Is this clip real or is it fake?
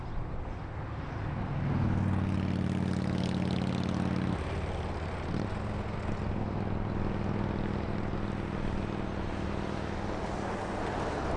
real